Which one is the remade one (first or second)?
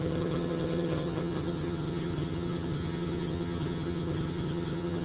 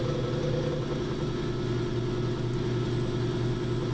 first